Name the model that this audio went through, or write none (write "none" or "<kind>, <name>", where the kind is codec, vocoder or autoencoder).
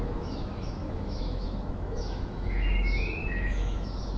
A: autoencoder, DAC-VAE